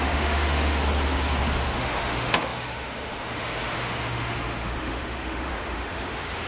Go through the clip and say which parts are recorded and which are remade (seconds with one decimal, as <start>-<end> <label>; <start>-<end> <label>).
0.0-0.8 remade; 0.8-1.7 recorded; 1.7-6.5 remade